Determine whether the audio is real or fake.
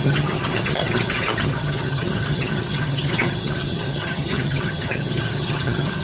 fake